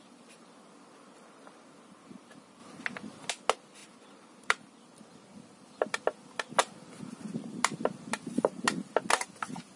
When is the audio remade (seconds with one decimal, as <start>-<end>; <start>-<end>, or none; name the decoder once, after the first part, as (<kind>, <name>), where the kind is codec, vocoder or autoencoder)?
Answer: none